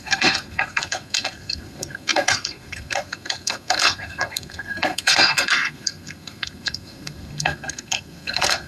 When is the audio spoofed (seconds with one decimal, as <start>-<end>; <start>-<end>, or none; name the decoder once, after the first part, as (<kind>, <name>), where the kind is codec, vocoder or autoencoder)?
0.0-8.7 (codec, SNAC)